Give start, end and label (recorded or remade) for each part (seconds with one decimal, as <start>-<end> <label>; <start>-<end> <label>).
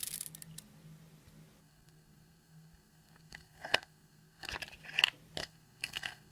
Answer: 0.0-1.6 recorded; 1.6-4.5 remade; 4.5-5.4 recorded; 5.4-6.3 remade